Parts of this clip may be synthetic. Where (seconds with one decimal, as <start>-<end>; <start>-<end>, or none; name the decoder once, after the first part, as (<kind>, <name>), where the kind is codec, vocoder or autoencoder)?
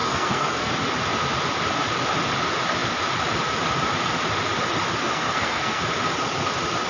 0.0-0.7 (codec, SNAC); 5.0-5.8